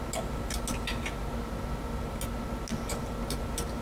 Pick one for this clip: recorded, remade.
recorded